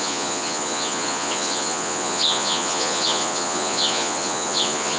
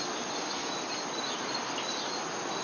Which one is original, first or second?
second